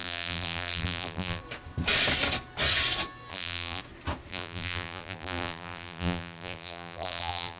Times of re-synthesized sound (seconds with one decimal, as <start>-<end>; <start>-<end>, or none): 0.0-1.4; 3.3-3.8; 4.3-7.6